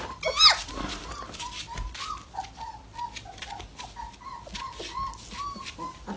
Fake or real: real